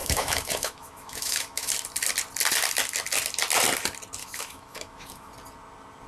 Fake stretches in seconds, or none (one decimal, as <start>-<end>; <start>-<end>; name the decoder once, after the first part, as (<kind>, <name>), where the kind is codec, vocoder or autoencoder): 0.0-1.7 (autoencoder, DAC-VAE); 4.2-5.3